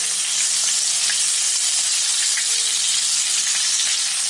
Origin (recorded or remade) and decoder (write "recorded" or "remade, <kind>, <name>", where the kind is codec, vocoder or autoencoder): recorded